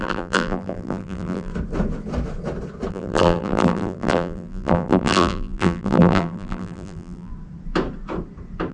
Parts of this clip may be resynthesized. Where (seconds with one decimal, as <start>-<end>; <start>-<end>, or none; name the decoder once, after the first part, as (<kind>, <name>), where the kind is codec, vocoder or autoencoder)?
0.0-1.5 (vocoder, BigVGAN v2); 2.9-7.3